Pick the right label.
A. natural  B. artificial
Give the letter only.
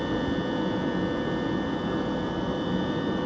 A